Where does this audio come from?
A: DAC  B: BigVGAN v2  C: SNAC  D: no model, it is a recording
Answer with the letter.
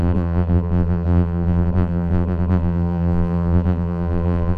B